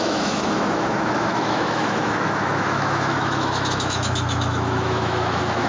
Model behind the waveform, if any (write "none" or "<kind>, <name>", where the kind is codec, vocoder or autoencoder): autoencoder, DAC-VAE